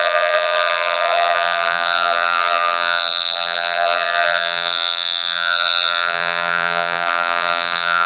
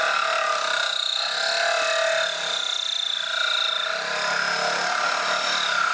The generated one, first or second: first